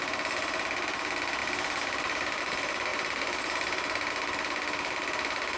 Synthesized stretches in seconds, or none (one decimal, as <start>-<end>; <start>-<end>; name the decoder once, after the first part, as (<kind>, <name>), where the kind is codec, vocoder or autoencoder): 1.4-2.4 (vocoder, BigVGAN v2); 2.9-4.1